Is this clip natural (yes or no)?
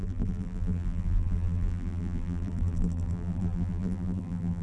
no